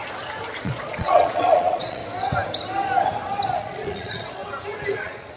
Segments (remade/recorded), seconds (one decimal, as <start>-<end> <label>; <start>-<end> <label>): 0.0-0.6 recorded; 0.6-2.0 remade; 2.0-3.6 recorded; 3.6-4.4 remade; 4.4-4.9 recorded; 4.9-5.4 remade